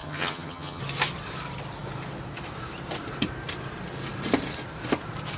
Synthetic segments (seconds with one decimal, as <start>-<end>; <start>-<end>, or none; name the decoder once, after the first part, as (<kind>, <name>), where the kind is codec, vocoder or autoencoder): 0.0-0.8 (vocoder, HiFi-GAN)